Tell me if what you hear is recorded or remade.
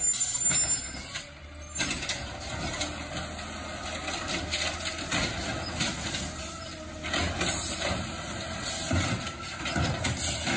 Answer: recorded